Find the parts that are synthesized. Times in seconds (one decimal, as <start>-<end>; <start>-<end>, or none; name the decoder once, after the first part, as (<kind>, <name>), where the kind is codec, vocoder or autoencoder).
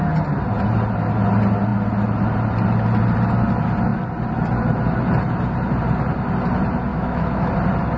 6.9-7.5 (autoencoder, DAC-VAE)